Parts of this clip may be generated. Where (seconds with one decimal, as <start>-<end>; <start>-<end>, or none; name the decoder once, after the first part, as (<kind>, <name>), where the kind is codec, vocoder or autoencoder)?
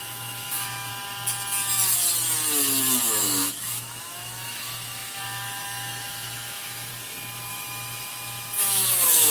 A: 0.0-0.9 (autoencoder, DAC-VAE); 3.1-6.9; 7.5-9.3